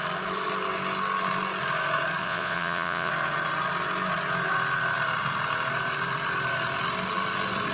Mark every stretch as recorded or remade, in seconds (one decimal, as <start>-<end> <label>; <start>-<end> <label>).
0.0-2.2 recorded; 2.2-3.1 remade; 3.1-7.7 recorded